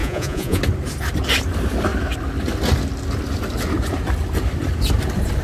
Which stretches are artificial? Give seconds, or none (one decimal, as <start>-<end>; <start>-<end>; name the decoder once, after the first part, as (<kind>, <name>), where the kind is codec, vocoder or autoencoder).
0.0-0.6 (vocoder, Vocos)